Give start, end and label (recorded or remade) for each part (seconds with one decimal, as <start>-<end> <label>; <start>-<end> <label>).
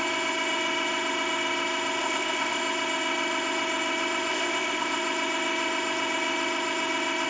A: 0.0-2.0 recorded; 2.0-2.6 remade; 2.6-4.3 recorded; 4.3-5.0 remade; 5.0-7.3 recorded